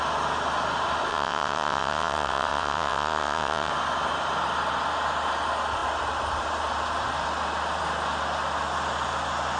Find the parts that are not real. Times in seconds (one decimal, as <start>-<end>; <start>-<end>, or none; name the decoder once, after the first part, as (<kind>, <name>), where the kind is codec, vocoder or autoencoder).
1.1-3.7 (vocoder, WaveNeXt)